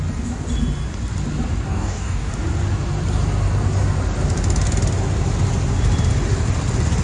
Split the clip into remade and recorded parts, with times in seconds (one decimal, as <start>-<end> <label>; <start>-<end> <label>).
0.0-1.7 recorded; 1.7-2.3 remade; 2.3-7.0 recorded